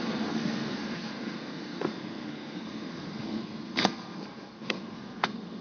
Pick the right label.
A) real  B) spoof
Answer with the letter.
B